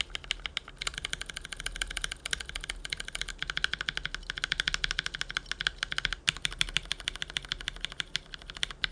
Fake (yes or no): no